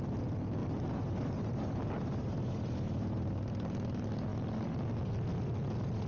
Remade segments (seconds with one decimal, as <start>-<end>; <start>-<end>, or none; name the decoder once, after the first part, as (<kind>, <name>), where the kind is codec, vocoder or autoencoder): 0.6-3.5 (vocoder, BigVGAN v2)